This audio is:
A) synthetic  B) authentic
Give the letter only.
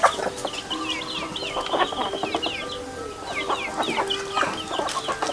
B